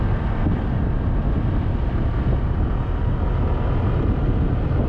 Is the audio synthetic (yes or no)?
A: no